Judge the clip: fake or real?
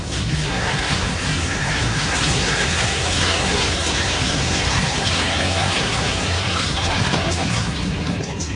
fake